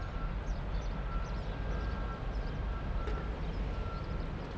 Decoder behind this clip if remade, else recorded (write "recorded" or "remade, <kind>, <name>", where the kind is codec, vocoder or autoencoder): recorded